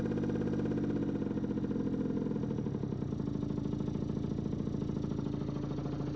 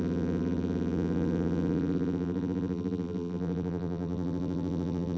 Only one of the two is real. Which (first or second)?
first